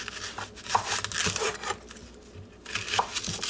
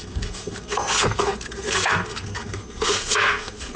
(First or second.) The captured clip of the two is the first